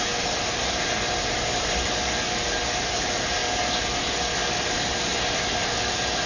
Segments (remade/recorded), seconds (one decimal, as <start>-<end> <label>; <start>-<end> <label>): 0.0-6.3 recorded